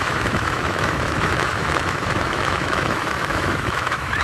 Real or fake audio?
fake